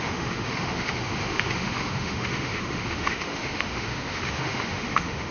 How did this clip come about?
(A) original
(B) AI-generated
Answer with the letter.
B